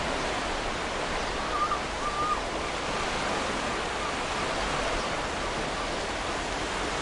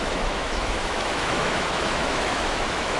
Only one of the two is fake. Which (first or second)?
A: second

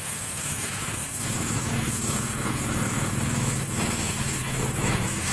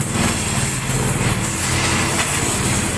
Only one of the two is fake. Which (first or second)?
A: first